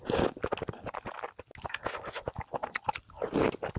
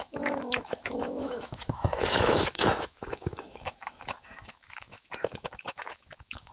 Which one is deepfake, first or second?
second